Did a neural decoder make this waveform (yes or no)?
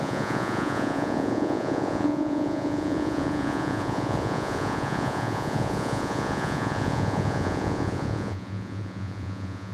yes